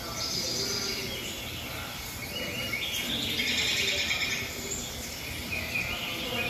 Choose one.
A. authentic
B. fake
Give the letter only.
A